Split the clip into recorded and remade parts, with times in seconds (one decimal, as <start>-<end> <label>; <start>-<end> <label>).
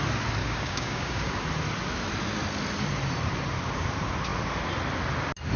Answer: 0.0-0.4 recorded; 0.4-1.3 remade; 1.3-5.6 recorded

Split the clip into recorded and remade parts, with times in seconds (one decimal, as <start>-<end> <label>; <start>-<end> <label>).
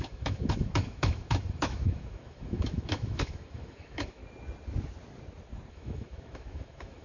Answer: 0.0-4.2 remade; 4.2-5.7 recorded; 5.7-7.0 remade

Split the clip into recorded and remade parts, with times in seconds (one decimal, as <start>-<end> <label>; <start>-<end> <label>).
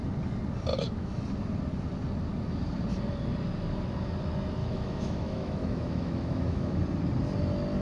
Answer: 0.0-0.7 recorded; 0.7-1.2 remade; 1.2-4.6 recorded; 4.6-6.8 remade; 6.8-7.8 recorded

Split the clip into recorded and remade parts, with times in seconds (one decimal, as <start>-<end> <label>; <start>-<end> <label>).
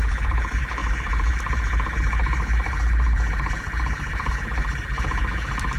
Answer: 0.0-5.8 remade